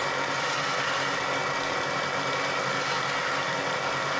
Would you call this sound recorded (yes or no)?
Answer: yes